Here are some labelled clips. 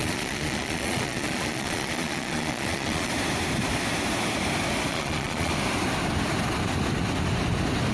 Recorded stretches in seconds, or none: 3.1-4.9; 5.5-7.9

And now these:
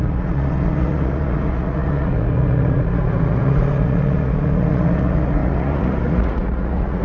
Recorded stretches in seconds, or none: none

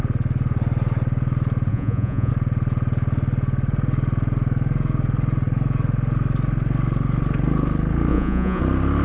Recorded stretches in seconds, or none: 0.0-1.7; 2.3-8.1; 8.6-9.0

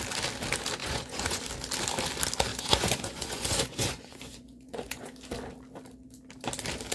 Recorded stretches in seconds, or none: 0.0-0.8; 1.4-2.5; 5.1-6.9